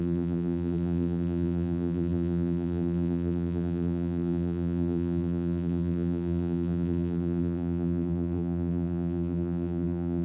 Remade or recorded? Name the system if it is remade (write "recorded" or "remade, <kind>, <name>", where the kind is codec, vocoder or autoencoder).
remade, vocoder, BigVGAN v2